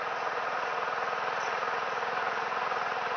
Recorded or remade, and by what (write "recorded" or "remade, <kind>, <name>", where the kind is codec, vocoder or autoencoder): remade, vocoder, Vocos